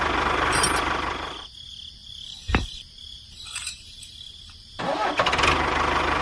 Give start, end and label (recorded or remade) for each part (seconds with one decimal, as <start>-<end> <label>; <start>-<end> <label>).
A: 0.0-2.0 recorded; 2.0-4.8 remade; 4.8-6.2 recorded